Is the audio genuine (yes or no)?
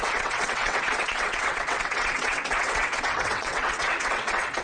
no